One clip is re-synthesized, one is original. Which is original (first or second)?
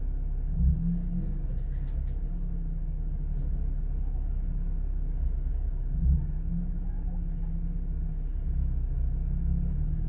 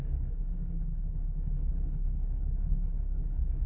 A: first